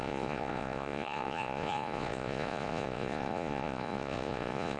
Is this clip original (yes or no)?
no